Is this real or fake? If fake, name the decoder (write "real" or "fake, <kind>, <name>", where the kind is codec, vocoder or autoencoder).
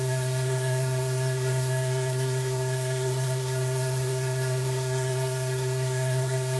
fake, codec, SNAC